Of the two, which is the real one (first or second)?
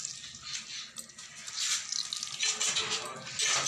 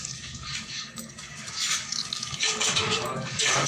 first